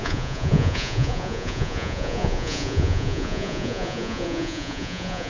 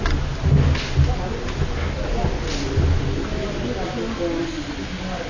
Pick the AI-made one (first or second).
first